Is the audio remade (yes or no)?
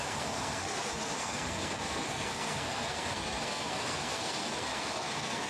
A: yes